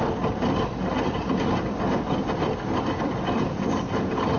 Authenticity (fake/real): real